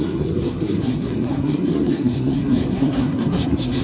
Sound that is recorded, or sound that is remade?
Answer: remade